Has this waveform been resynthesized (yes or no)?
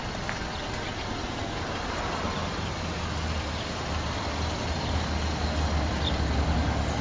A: no